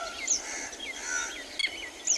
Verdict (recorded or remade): recorded